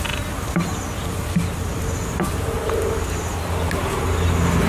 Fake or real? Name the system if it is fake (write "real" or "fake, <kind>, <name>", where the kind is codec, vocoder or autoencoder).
real